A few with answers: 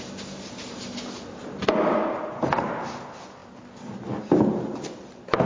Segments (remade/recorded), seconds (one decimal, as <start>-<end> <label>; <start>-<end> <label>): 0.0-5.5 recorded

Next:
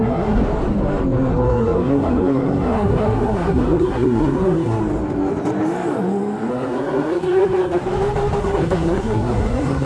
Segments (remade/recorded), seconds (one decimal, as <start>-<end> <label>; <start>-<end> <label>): 0.0-0.4 remade; 0.4-1.3 recorded; 1.3-4.8 remade; 4.8-6.5 recorded; 6.5-7.8 remade; 7.8-8.4 recorded; 8.4-9.9 remade

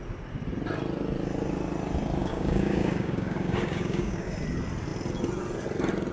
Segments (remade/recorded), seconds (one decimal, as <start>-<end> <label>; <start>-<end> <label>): 0.0-2.2 recorded; 2.2-4.3 remade; 4.3-6.1 recorded

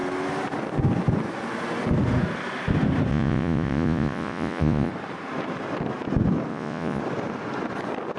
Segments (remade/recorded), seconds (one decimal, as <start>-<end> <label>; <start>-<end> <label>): 0.0-3.1 recorded; 3.1-4.9 remade; 4.9-6.5 recorded; 6.5-7.0 remade; 7.0-8.2 recorded

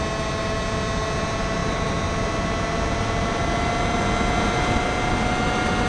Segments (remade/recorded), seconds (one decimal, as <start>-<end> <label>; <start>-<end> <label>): 0.0-5.9 recorded